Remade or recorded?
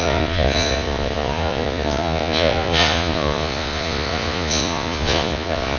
remade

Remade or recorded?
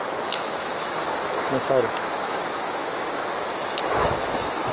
remade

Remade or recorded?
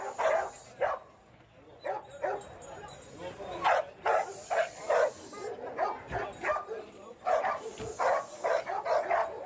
recorded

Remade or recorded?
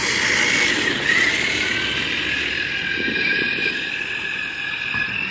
recorded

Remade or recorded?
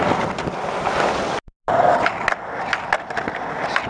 recorded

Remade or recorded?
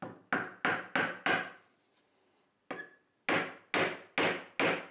recorded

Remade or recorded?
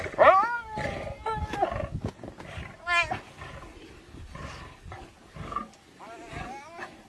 recorded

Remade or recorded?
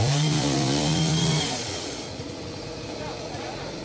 remade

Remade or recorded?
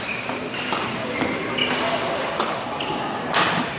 recorded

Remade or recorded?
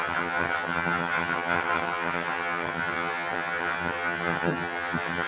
remade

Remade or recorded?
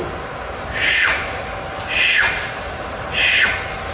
recorded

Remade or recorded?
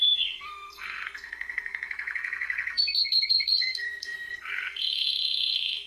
remade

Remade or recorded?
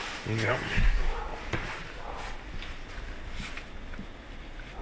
recorded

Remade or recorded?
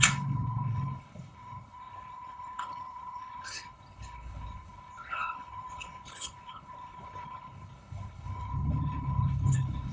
remade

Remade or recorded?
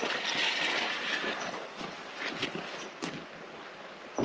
recorded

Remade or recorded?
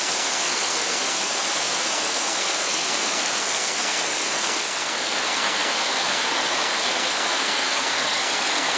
remade